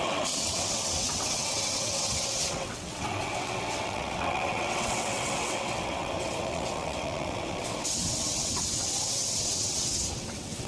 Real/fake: fake